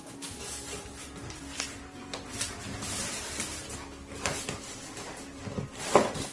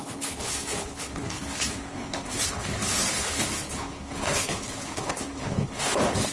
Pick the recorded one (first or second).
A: first